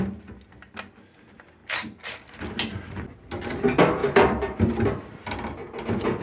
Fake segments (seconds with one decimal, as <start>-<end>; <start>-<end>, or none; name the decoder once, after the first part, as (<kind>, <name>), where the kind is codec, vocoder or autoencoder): 4.0-5.1 (vocoder, BigVGAN v2)